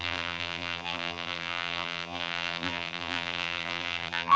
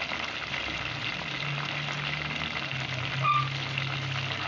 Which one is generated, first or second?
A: first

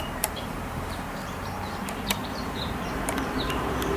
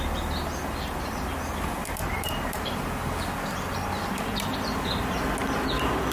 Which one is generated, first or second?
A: first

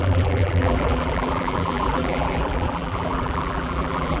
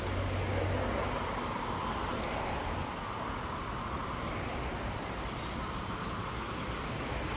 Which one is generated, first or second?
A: first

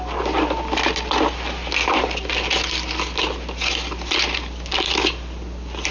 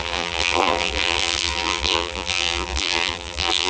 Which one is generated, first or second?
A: second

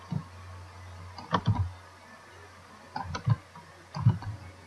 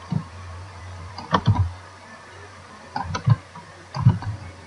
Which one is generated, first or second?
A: second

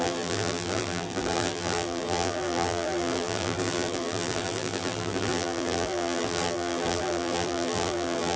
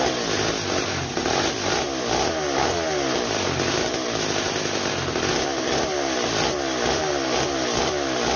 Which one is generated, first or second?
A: first